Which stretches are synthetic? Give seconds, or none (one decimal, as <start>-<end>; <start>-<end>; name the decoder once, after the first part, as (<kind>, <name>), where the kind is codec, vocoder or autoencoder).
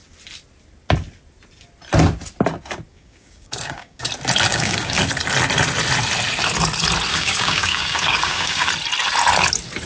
2.9-4.1 (codec, DAC); 4.5-5.0; 7.1-8.7